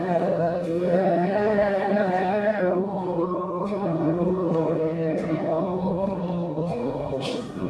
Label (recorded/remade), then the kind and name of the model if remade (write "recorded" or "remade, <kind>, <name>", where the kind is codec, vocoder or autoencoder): remade, codec, SNAC